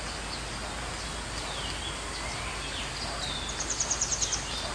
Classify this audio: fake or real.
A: real